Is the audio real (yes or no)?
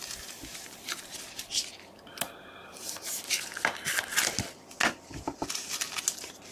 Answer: yes